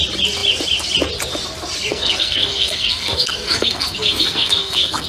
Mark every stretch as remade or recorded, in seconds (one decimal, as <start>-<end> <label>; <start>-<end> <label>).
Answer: 0.0-1.9 recorded; 1.9-5.1 remade